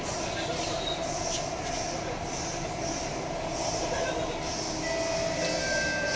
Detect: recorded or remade recorded